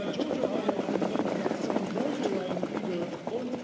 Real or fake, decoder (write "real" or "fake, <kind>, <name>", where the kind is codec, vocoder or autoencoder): real